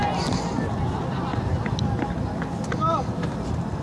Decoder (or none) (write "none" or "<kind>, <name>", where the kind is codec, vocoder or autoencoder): none